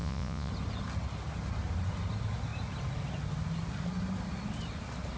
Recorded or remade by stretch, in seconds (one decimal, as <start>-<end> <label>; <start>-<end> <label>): 0.0-0.5 remade; 0.5-5.2 recorded